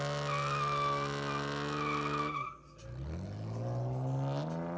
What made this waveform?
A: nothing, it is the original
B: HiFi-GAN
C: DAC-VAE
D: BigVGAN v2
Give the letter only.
A